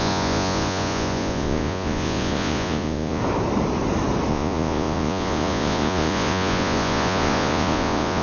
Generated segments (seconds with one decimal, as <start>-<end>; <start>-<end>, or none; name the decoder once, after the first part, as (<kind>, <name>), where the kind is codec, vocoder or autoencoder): 0.0-3.2 (vocoder, Vocos); 4.3-8.2